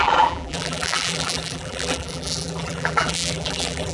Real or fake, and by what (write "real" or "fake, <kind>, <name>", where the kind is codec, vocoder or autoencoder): fake, vocoder, BigVGAN v2